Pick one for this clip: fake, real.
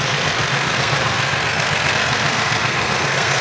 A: fake